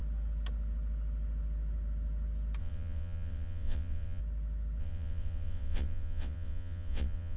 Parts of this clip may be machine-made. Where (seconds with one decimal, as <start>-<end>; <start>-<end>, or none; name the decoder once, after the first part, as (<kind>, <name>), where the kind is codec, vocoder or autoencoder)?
2.6-4.2 (vocoder, WaveNeXt); 4.8-7.4